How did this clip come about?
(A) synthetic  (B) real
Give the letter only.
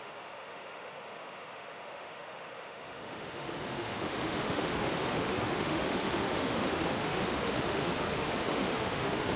A